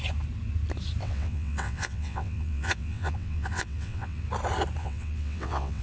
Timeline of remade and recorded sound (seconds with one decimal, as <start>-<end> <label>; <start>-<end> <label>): 0.0-1.0 recorded; 1.0-4.2 remade; 4.2-4.8 recorded; 4.8-5.8 remade